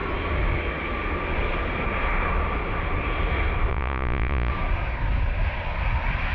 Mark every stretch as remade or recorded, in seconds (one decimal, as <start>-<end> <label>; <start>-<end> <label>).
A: 0.0-3.7 recorded; 3.7-4.5 remade; 4.5-6.3 recorded